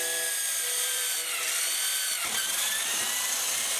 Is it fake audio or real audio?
fake